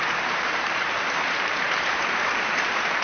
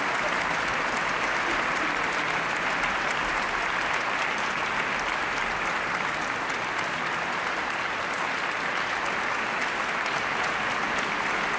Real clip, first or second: second